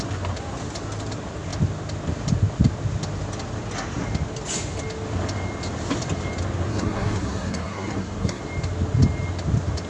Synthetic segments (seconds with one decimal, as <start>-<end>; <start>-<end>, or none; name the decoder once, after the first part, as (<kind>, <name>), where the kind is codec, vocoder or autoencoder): 6.7-8.4 (codec, SNAC)